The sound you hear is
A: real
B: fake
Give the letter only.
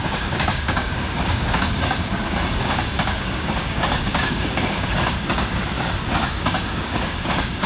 B